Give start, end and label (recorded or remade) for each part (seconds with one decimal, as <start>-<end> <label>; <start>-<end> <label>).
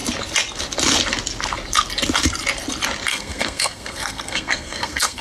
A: 0.0-3.1 recorded; 3.1-5.2 remade